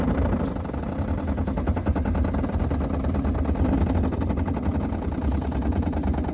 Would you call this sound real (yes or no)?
yes